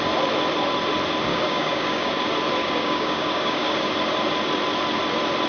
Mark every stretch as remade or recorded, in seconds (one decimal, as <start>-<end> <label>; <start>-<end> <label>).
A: 0.0-1.3 recorded; 1.3-2.1 remade; 2.1-2.6 recorded; 2.6-3.9 remade; 3.9-5.5 recorded

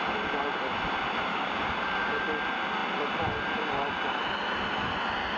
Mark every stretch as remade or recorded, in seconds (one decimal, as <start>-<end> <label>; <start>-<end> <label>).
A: 0.0-1.3 recorded; 1.3-2.2 remade; 2.2-5.4 recorded